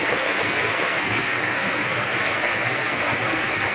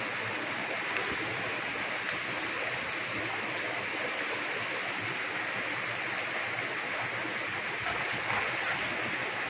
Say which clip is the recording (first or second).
second